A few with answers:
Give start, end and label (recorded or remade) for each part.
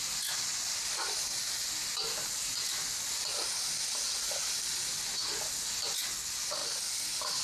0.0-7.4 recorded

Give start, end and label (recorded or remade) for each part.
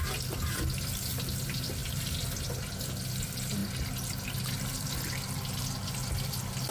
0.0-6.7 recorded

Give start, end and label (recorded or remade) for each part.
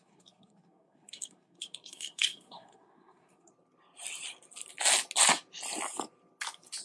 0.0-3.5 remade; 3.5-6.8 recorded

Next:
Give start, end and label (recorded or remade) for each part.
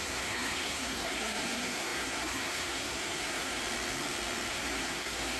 0.0-3.6 remade; 3.6-4.5 recorded; 4.5-5.4 remade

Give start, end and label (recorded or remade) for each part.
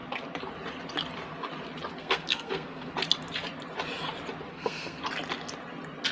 0.0-2.0 recorded; 2.0-2.9 remade; 2.9-4.5 recorded; 4.5-5.0 remade; 5.0-6.1 recorded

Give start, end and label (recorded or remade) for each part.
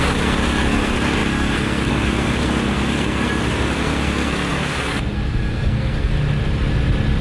0.0-6.1 remade; 6.1-7.2 recorded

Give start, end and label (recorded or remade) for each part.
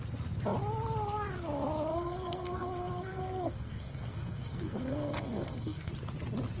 0.0-1.9 recorded; 1.9-5.9 remade; 5.9-6.6 recorded